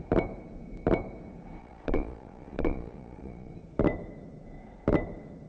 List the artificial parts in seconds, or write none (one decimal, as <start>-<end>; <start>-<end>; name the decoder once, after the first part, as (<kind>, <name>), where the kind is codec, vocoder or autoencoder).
1.6-3.5 (vocoder, Vocos)